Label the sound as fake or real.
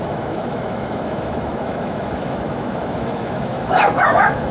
fake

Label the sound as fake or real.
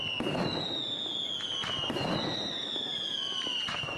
real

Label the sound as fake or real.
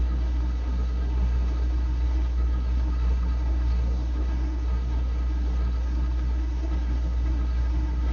fake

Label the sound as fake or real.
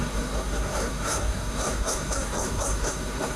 fake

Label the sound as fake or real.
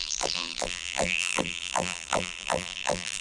fake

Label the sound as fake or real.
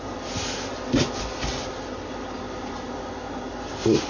real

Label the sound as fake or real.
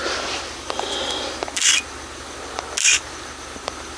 real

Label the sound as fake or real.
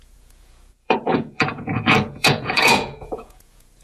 fake